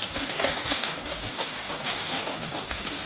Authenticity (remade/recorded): remade